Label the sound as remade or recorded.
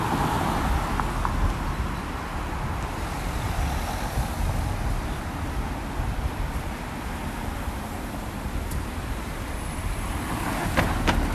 recorded